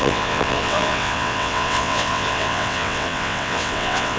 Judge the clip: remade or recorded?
remade